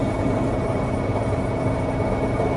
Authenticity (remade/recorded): recorded